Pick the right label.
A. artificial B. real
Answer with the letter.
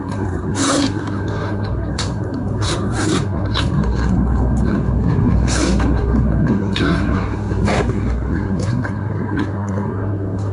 A